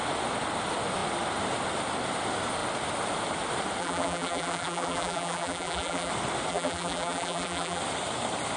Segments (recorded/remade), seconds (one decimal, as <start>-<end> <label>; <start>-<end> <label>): 0.0-3.8 recorded; 3.8-6.1 remade; 6.1-6.5 recorded; 6.5-7.8 remade; 7.8-8.6 recorded

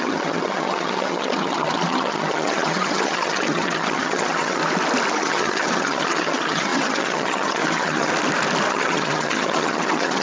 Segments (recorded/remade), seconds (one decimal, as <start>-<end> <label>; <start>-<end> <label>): 0.0-4.6 remade; 4.6-5.1 recorded; 5.1-8.1 remade; 8.1-8.7 recorded; 8.7-10.2 remade